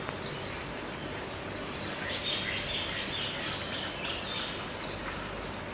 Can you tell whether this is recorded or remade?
recorded